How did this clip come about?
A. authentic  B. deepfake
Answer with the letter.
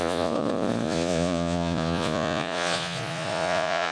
B